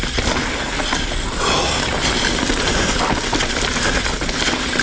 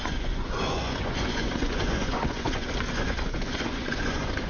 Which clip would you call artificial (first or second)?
second